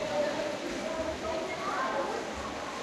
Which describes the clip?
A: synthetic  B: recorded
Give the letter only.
B